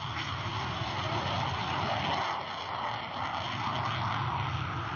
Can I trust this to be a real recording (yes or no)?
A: yes